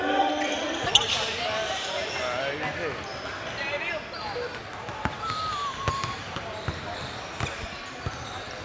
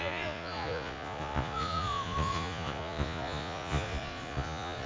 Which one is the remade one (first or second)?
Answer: second